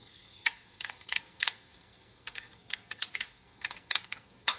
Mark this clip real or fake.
fake